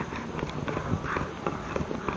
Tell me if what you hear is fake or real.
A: real